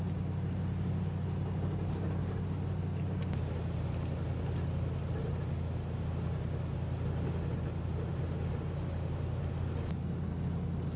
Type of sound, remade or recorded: recorded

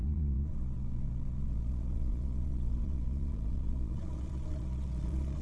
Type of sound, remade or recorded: remade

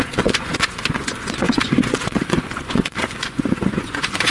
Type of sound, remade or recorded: remade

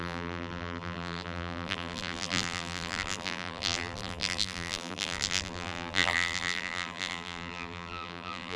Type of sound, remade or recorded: remade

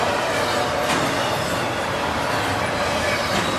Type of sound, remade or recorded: recorded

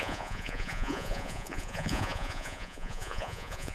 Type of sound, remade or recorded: remade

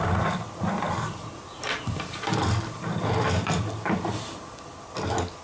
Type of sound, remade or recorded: recorded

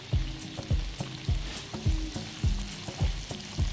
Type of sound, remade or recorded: recorded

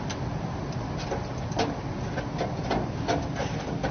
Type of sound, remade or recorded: recorded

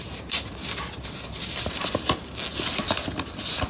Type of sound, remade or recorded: recorded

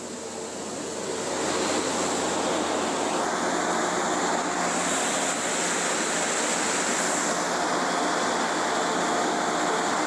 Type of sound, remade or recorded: recorded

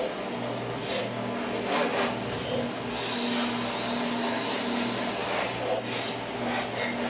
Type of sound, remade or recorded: recorded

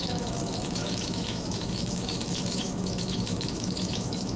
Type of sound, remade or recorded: remade